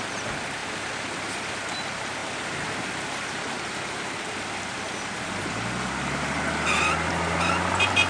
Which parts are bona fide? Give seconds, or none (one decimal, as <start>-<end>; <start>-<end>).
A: 0.0-8.1